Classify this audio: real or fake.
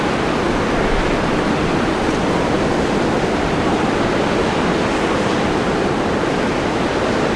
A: real